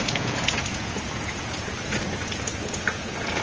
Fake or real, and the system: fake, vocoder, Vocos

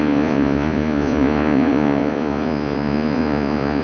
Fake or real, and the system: fake, vocoder, Vocos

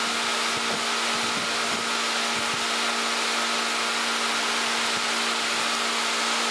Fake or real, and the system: real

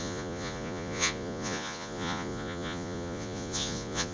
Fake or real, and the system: fake, vocoder, Vocos